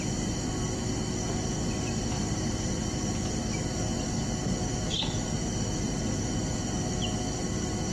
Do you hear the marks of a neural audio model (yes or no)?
no